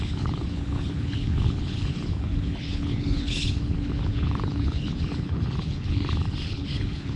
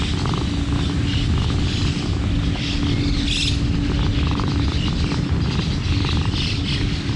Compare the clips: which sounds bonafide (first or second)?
second